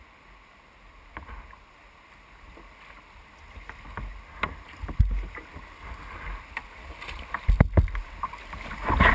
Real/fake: real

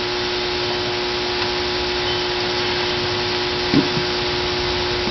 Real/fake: real